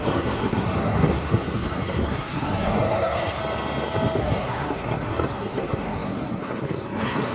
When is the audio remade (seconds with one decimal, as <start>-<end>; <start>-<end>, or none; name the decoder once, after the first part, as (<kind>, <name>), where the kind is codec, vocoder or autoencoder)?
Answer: 0.0-3.4 (codec, SNAC); 4.2-7.3